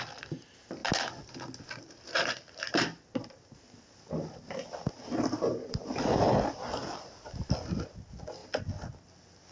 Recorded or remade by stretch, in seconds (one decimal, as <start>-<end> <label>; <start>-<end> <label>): 0.0-9.5 recorded